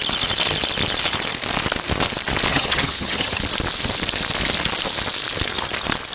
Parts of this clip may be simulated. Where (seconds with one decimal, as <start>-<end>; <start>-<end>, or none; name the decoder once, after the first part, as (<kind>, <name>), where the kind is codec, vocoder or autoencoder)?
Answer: 2.5-3.4 (vocoder, HiFi-GAN)